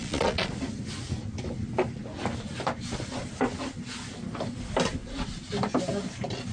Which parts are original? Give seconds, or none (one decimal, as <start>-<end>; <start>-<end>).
0.5-6.5